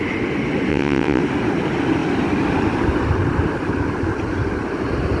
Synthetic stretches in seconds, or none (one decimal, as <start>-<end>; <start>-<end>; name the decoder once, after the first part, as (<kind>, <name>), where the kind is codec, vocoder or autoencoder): 0.7-1.2 (vocoder, WaveNeXt)